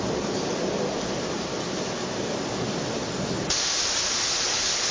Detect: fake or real real